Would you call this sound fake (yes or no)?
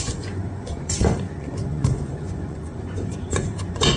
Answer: yes